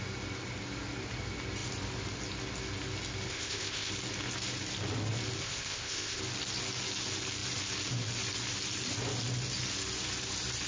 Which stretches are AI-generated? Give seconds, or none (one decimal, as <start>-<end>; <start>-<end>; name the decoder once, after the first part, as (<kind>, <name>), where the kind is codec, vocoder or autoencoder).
3.3-3.9 (codec, ZipCodec); 5.4-6.2